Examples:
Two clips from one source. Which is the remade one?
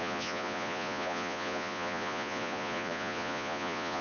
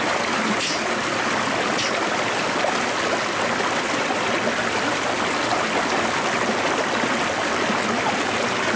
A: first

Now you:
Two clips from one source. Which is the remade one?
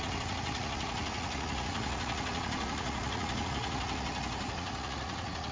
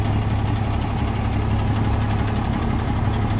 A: first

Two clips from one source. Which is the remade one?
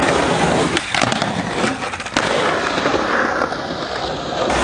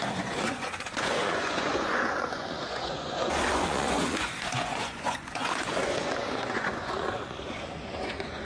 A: second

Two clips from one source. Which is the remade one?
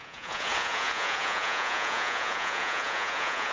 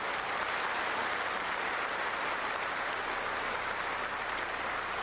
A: first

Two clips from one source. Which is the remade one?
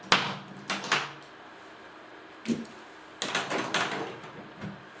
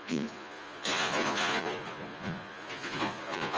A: second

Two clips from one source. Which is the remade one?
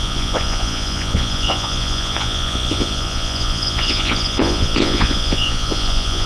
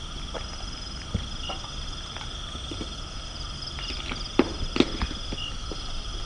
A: first